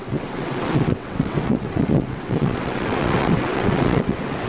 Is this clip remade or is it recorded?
remade